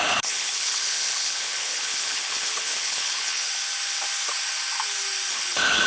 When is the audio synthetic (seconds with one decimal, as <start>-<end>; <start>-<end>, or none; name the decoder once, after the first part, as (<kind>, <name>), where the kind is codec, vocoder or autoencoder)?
0.0-3.5 (codec, HILCodec); 5.3-5.9